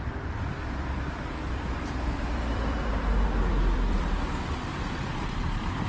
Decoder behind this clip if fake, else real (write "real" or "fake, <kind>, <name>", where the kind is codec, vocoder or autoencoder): fake, vocoder, BigVGAN v2